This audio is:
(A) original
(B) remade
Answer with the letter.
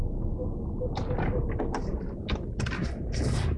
A